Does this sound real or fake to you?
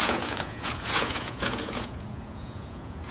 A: fake